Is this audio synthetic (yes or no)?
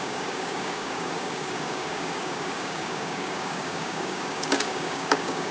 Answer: yes